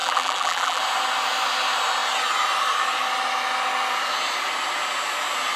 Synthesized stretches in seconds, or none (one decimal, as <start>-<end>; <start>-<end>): 0.0-0.8